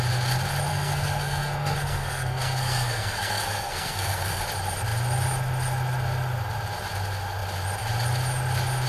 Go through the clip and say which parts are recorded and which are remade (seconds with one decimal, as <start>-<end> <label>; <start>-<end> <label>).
0.0-0.7 recorded; 0.7-4.4 remade; 4.4-8.9 recorded